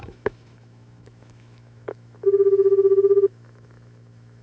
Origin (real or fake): fake